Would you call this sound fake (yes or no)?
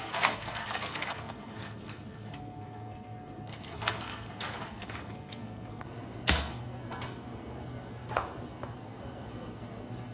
yes